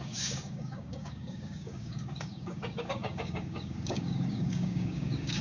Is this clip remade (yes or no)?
yes